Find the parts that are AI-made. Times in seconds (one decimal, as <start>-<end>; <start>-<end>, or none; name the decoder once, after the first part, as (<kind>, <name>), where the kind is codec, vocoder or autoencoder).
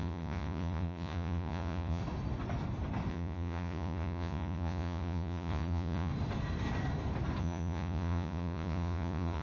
0.0-2.0 (vocoder, Vocos); 3.1-6.1; 7.4-9.4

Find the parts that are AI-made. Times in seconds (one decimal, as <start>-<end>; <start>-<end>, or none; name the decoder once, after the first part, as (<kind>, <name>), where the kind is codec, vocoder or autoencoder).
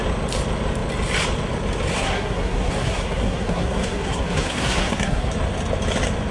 1.9-5.3 (codec, SNAC)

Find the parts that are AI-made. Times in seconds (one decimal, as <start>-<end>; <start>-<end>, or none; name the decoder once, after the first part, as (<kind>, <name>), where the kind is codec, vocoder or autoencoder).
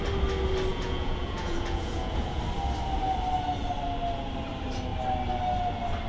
0.7-2.4 (vocoder, Vocos)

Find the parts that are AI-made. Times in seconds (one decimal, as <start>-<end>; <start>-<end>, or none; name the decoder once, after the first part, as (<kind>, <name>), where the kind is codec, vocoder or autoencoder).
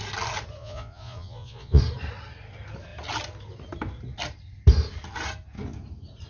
0.6-1.8 (vocoder, Vocos)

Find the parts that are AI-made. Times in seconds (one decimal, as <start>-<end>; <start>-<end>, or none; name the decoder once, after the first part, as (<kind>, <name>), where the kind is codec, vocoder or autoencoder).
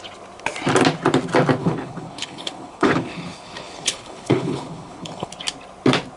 1.6-5.3 (codec, HILCodec)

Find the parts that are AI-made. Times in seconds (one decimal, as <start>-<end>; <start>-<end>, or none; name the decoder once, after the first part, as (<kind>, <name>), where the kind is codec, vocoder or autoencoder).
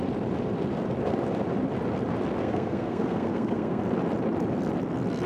2.4-3.8 (codec, SNAC)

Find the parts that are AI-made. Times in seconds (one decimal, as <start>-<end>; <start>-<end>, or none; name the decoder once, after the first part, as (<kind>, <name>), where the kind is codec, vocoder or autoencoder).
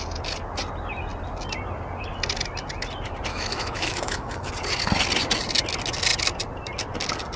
3.3-4.5 (autoencoder, DAC-VAE)